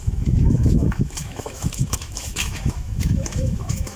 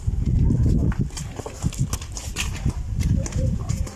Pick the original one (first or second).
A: second